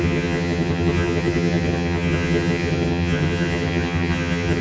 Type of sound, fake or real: fake